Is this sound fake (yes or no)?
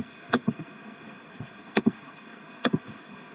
yes